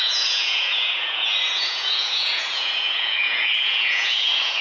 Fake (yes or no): yes